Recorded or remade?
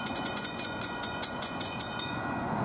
remade